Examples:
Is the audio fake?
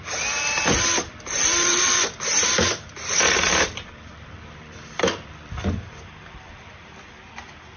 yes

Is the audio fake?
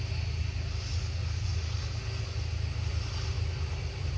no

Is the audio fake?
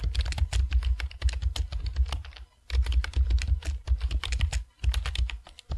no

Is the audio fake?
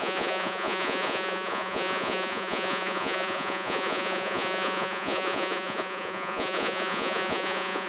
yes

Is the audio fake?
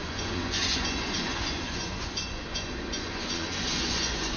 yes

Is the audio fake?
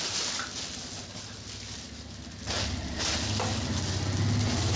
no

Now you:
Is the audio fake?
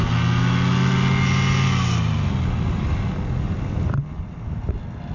no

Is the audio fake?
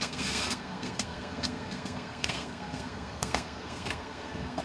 yes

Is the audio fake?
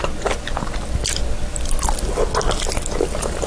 no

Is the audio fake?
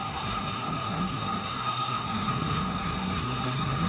yes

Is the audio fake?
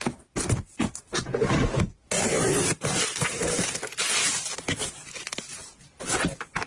no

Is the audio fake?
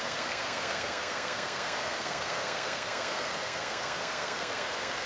yes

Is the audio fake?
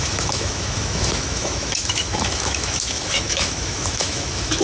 yes